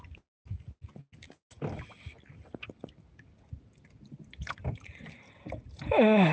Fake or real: real